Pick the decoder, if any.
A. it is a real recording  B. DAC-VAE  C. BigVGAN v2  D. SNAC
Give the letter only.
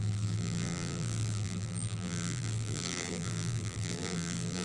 C